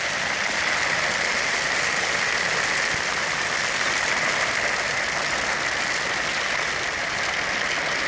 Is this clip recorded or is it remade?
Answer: recorded